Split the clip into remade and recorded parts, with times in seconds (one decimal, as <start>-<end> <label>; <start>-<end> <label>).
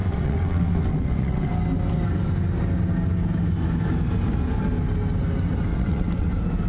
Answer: 0.0-1.5 remade; 1.5-5.7 recorded; 5.7-6.3 remade; 6.3-6.7 recorded